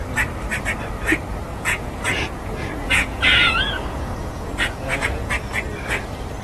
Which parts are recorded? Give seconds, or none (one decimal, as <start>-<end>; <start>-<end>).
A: 0.0-1.5; 5.3-6.4